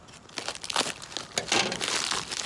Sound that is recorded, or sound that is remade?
recorded